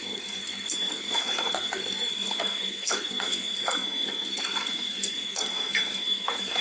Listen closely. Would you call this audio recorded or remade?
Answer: remade